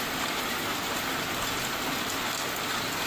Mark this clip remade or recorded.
recorded